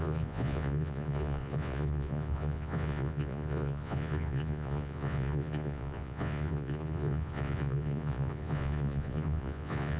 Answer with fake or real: fake